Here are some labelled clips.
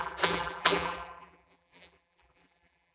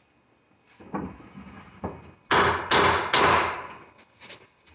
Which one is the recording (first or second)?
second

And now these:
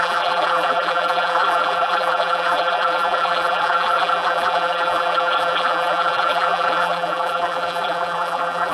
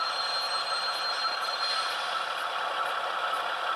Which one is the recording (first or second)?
second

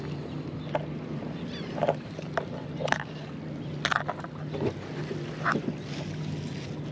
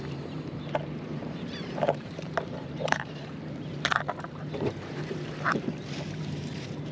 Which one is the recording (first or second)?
first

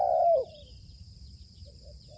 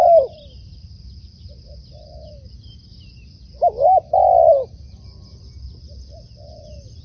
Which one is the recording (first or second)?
second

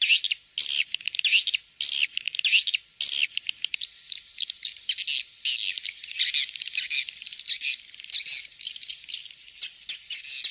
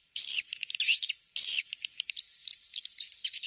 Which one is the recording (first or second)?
first